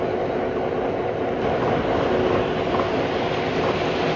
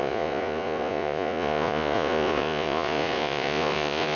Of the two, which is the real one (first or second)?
first